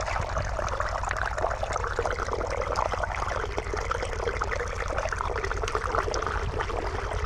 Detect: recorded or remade recorded